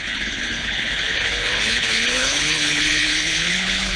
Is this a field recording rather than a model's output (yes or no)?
no